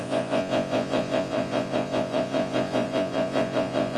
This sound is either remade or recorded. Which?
remade